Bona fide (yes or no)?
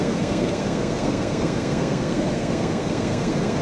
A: no